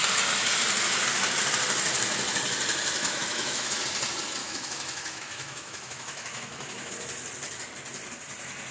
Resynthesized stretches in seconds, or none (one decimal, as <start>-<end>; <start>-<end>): 3.0-3.8; 4.4-6.9